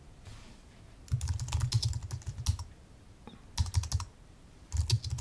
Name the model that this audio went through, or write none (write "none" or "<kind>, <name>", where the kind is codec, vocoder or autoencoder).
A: none